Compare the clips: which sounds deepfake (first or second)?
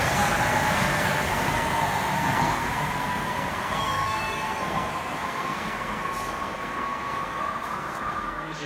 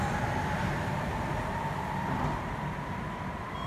first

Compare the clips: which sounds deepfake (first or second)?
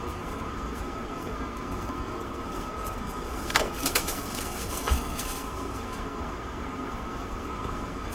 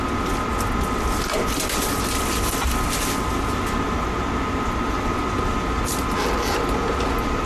first